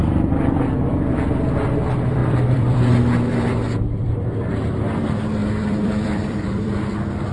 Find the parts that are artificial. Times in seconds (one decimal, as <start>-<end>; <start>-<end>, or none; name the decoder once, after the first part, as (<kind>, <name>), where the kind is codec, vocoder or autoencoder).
0.0-7.3 (vocoder, BigVGAN v2)